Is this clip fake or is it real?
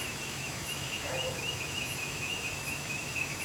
fake